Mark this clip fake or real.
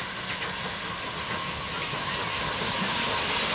real